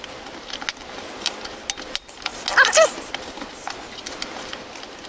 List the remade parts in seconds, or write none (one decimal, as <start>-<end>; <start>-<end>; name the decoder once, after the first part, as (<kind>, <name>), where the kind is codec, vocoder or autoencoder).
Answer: none